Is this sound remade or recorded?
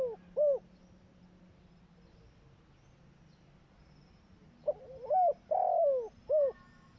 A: recorded